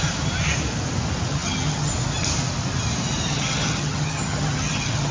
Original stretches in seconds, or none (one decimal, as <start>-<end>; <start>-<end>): 0.0-1.3; 1.9-3.3